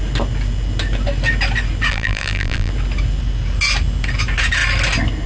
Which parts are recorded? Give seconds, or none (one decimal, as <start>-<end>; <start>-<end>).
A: 0.0-1.9; 2.7-5.3